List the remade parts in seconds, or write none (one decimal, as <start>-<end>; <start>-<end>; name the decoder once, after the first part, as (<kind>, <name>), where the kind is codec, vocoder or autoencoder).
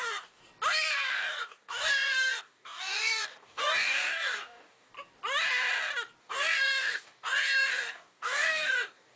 0.0-0.4 (codec, DAC); 1.1-4.9; 6.2-9.2